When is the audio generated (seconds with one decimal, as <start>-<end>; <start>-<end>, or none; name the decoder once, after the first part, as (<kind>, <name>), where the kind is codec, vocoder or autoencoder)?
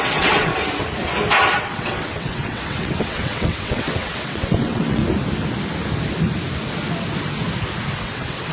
0.0-0.5 (vocoder, WaveNeXt); 1.6-5.0; 8.0-8.5